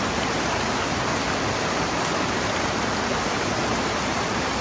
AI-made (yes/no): yes